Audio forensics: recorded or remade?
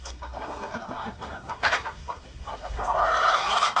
remade